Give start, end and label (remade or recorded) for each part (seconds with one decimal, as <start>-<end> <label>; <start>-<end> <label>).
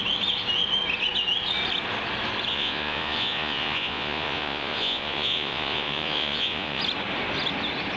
0.0-2.5 recorded; 2.5-6.8 remade; 6.8-8.0 recorded